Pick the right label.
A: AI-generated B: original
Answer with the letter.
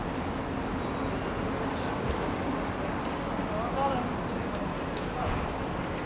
B